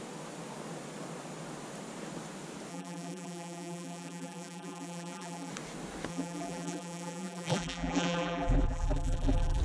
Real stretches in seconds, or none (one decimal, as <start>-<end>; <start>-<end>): 0.0-2.7; 5.5-6.1